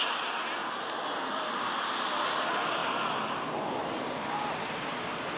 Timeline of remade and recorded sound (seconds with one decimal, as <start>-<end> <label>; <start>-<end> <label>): 0.0-5.4 recorded